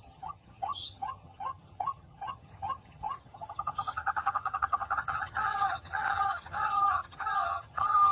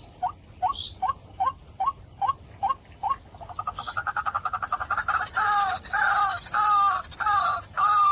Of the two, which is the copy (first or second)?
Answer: first